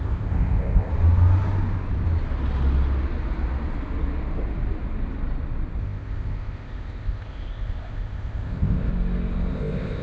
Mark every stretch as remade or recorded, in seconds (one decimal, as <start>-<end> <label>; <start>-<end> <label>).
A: 0.0-0.9 remade; 0.9-5.8 recorded; 5.8-8.9 remade; 8.9-9.5 recorded; 9.5-10.0 remade